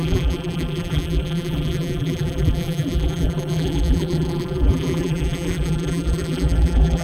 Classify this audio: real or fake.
fake